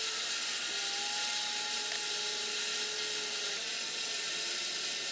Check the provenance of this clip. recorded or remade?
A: recorded